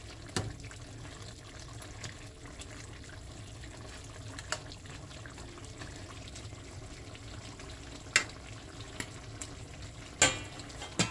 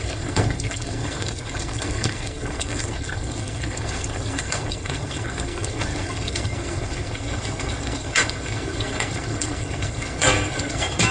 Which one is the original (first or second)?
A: first